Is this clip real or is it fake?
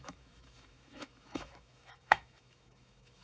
fake